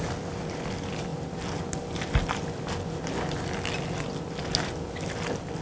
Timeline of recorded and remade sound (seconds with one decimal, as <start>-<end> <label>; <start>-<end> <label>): 0.0-5.6 recorded